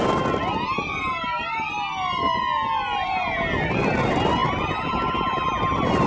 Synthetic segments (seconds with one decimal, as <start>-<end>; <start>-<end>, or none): none